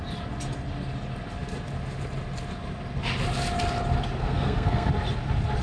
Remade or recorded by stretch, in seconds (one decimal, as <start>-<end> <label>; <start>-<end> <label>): 0.0-4.2 recorded; 4.2-4.9 remade; 4.9-5.6 recorded